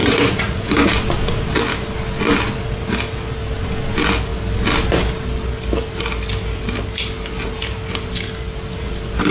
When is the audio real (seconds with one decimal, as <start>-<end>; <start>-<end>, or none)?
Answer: 0.9-9.3